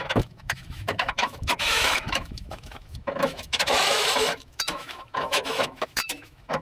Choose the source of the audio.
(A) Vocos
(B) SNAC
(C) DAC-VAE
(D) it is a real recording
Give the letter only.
C